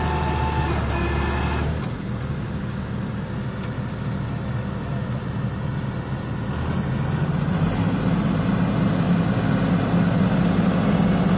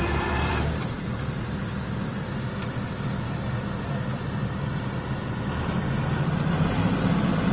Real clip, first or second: first